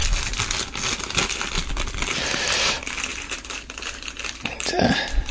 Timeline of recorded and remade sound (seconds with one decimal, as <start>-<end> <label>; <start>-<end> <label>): 0.0-2.1 recorded; 2.1-5.3 remade